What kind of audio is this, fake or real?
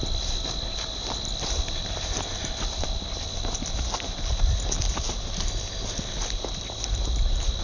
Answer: real